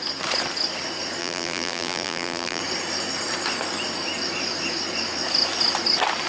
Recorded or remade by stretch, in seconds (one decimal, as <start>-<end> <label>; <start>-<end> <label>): 0.0-1.2 recorded; 1.2-2.6 remade; 2.6-6.3 recorded